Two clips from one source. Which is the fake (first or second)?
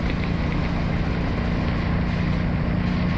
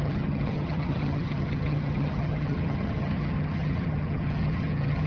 second